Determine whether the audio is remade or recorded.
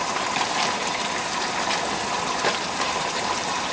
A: remade